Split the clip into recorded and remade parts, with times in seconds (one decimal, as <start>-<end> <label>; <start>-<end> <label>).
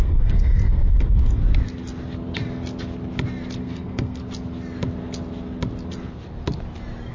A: 0.0-1.4 remade; 1.4-3.6 recorded; 3.6-4.2 remade; 4.2-7.1 recorded